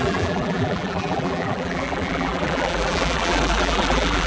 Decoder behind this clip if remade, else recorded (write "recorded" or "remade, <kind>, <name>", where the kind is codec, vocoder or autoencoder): remade, vocoder, BigVGAN v2